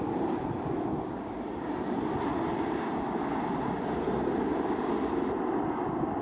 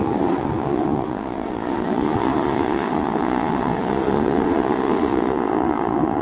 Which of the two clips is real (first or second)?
first